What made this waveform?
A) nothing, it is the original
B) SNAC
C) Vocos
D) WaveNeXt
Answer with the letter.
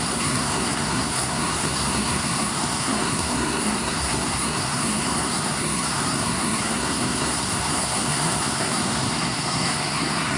B